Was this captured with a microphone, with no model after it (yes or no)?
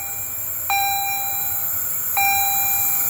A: yes